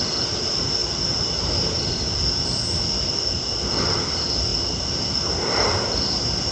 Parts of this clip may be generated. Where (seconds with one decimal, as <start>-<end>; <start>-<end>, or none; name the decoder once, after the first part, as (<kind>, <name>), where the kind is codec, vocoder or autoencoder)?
none